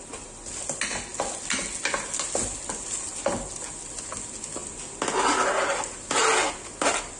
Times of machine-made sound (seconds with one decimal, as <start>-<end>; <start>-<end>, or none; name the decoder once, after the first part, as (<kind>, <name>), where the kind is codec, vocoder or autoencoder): none